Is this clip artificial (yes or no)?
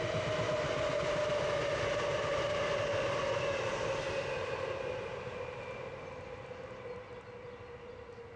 no